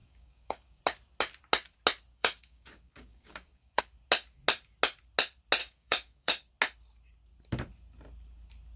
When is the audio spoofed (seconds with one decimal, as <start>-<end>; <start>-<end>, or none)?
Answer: 0.0-0.8; 2.1-3.8; 5.6-6.5